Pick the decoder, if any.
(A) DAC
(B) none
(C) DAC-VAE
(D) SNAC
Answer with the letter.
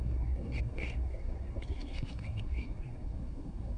D